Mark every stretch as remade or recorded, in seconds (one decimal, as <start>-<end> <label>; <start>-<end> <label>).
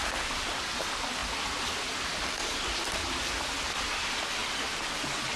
0.0-5.4 recorded